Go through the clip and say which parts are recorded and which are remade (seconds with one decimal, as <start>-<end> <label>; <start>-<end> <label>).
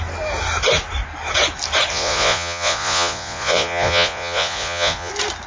0.0-1.9 recorded; 1.9-5.1 remade; 5.1-5.5 recorded